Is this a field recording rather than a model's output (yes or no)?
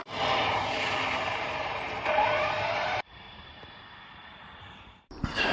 no